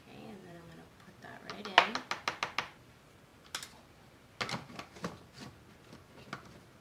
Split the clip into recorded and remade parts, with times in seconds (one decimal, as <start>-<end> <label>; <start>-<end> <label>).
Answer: 0.0-0.4 recorded; 0.4-0.9 remade; 0.9-6.8 recorded